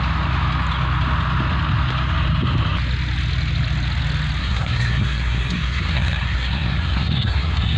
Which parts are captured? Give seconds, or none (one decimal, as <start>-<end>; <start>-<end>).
0.0-4.4